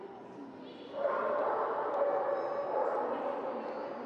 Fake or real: real